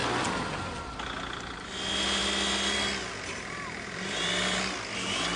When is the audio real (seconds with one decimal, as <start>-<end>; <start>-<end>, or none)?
0.0-5.4